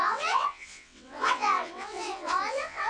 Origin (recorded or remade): remade